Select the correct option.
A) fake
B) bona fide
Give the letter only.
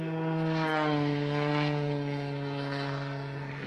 A